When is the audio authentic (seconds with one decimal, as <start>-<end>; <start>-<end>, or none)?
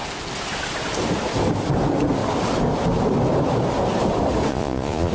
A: 0.0-4.5